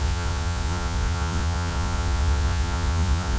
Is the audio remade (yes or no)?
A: yes